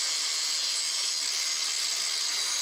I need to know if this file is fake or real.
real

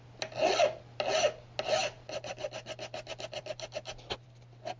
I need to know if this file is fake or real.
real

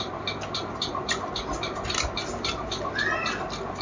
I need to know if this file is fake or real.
real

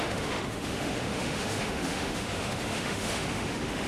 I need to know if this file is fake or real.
fake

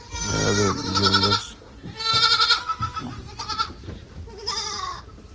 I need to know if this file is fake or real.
real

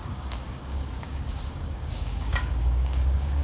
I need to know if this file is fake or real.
fake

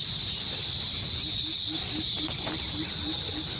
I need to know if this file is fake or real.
real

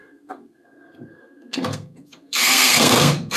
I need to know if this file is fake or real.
fake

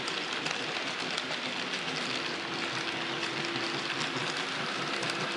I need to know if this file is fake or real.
real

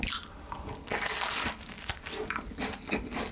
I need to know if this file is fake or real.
real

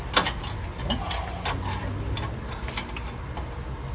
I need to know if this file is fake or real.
real